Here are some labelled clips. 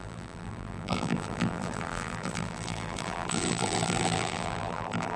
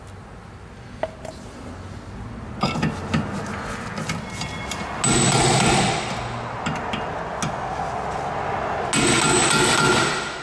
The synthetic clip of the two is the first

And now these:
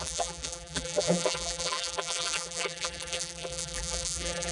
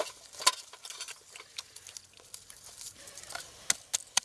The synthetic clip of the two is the first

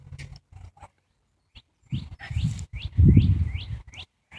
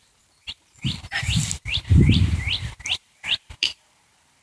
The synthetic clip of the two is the second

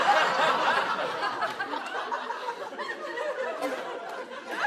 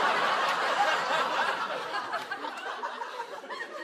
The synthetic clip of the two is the second